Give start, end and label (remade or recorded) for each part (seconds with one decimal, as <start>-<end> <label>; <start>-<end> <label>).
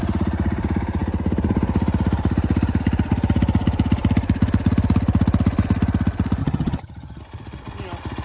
0.0-6.4 recorded; 6.4-7.2 remade; 7.2-8.2 recorded